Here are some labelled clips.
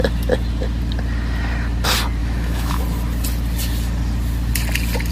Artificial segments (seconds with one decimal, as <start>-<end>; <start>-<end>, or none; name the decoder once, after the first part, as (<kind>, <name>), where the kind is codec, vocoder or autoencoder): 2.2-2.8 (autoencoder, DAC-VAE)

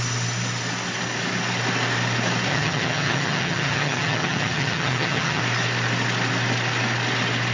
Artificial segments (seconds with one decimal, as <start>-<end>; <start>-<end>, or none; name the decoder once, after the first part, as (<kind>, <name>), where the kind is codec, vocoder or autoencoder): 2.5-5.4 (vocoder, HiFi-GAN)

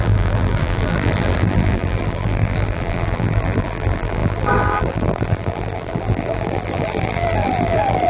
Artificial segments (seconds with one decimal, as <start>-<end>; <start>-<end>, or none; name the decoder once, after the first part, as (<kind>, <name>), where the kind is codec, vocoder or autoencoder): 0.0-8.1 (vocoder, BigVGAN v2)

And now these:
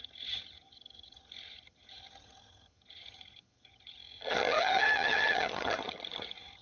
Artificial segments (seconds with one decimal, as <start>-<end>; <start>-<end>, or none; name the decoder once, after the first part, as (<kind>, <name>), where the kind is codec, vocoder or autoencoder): 0.0-6.6 (vocoder, HiFi-GAN)